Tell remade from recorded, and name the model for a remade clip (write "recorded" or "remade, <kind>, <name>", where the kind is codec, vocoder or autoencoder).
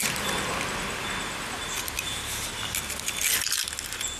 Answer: recorded